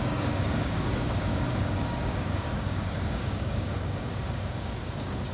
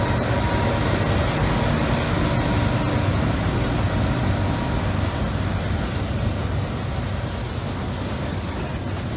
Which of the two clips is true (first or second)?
second